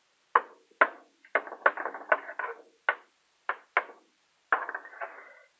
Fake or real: real